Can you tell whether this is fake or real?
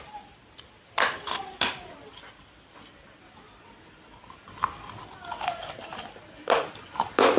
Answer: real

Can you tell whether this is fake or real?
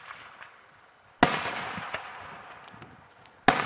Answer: real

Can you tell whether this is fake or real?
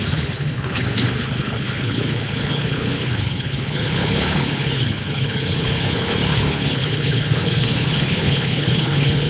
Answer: fake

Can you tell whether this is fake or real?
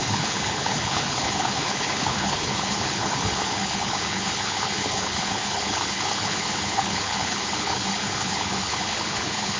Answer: fake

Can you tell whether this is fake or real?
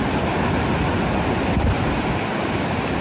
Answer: real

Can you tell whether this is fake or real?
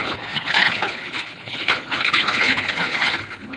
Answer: fake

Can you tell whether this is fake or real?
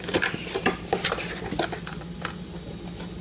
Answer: real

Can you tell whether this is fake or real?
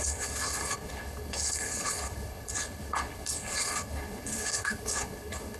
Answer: fake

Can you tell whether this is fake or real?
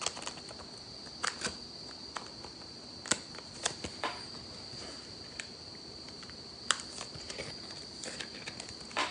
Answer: real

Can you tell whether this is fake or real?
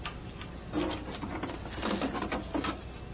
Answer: real